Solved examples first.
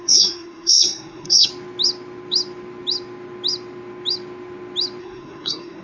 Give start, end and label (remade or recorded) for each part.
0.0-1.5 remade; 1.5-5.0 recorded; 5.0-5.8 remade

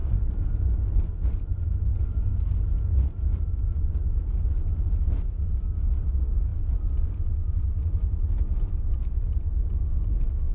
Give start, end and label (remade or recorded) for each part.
0.0-0.5 remade; 0.5-2.0 recorded; 2.0-2.6 remade; 2.6-10.5 recorded

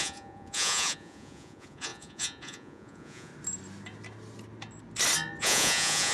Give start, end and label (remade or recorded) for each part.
0.0-3.3 remade; 3.3-5.4 recorded; 5.4-6.1 remade

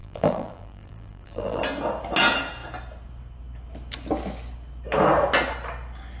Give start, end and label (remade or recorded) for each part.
0.0-1.6 remade; 1.6-6.2 recorded